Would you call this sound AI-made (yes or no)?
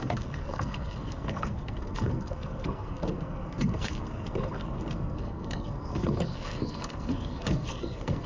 yes